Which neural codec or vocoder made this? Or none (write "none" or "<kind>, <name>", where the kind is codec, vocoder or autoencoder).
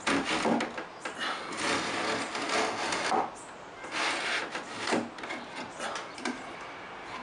none